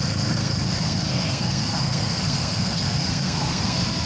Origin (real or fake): fake